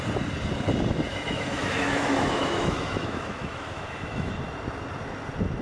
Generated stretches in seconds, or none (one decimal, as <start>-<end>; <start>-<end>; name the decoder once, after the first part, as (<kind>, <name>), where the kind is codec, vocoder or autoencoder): 1.1-4.3 (autoencoder, DAC-VAE)